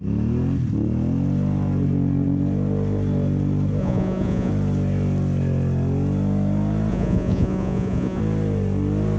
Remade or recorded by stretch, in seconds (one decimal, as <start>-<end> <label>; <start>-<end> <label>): 0.0-3.8 recorded; 3.8-4.5 remade; 4.5-6.9 recorded; 6.9-8.2 remade; 8.2-9.2 recorded